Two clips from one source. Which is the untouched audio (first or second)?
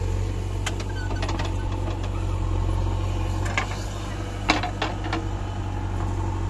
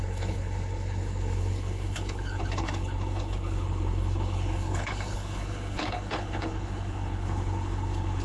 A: first